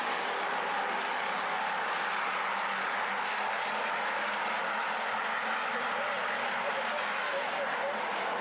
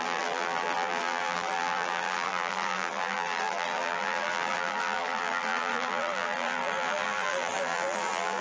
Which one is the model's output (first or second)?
second